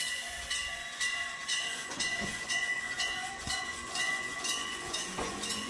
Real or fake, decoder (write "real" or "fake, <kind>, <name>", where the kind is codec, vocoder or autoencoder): fake, vocoder, Vocos